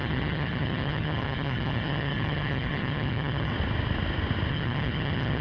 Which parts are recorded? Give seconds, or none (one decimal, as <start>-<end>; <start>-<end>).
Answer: 3.5-4.5